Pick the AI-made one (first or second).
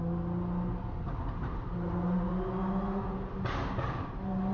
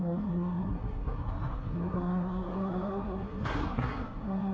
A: second